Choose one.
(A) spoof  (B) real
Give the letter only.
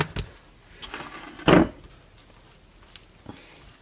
B